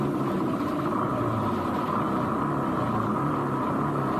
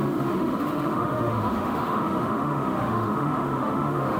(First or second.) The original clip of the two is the first